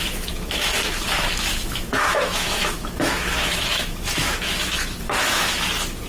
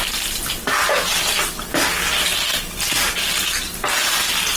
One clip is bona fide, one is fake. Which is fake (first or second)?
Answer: first